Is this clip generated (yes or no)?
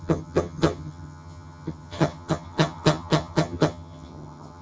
yes